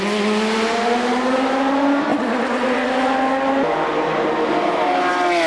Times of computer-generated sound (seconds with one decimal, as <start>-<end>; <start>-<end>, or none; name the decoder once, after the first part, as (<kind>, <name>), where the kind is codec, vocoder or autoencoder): none